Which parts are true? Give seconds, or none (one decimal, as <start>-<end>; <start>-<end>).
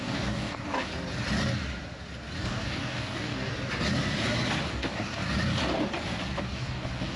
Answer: 0.9-2.4; 3.5-4.7; 5.2-6.4